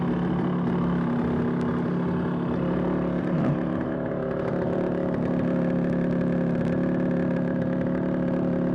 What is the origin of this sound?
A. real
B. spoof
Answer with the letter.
A